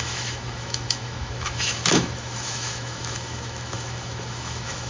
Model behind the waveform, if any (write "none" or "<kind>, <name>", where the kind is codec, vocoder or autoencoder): autoencoder, DAC-VAE